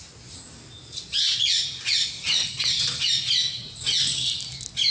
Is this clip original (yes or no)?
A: yes